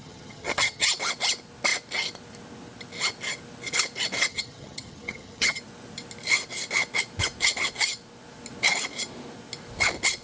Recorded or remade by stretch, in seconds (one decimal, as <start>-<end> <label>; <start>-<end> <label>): 0.0-0.9 remade; 0.9-4.3 recorded; 4.3-5.6 remade; 5.6-10.2 recorded